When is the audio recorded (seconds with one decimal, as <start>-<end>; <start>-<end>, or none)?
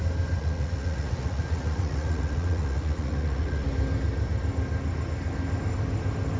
0.0-0.4; 3.7-6.4